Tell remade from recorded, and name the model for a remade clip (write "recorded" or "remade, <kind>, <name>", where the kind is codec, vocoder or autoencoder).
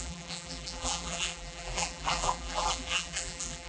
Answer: remade, vocoder, BigVGAN v2